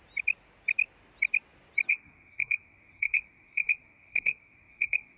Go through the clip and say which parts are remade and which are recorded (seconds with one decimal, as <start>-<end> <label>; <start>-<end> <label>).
0.0-1.9 recorded; 1.9-5.2 remade